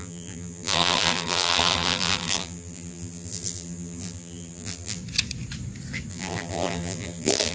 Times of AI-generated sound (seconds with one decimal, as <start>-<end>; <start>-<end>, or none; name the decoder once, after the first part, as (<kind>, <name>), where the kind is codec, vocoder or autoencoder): 0.0-5.0 (vocoder, BigVGAN v2); 6.1-7.5